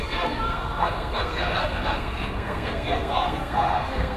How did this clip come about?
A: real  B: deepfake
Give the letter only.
B